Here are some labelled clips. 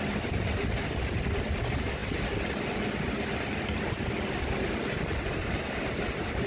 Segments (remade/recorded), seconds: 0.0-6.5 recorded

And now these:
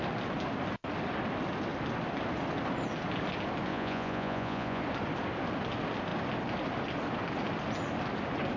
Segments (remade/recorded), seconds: 0.0-3.7 recorded; 3.7-4.8 remade; 4.8-8.6 recorded

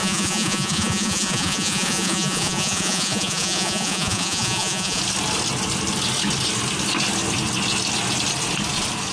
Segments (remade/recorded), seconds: 0.0-5.0 remade; 5.0-9.1 recorded

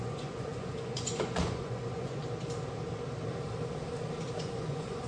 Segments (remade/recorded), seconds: 0.0-2.2 remade; 2.2-4.4 recorded; 4.4-5.1 remade

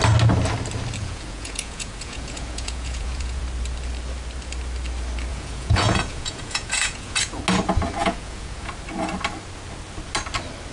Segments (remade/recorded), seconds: 0.0-1.0 recorded; 1.0-3.4 remade; 3.4-5.3 recorded; 5.3-7.4 remade; 7.4-8.0 recorded; 8.0-8.7 remade; 8.7-10.7 recorded

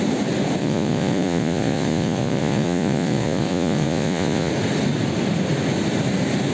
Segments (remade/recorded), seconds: 0.0-0.6 recorded; 0.6-4.5 remade; 4.5-6.5 recorded

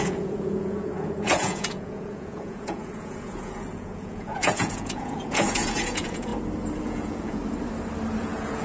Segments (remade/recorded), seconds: 0.0-6.3 remade; 6.3-6.8 recorded; 6.8-7.4 remade; 7.4-8.2 recorded; 8.2-8.6 remade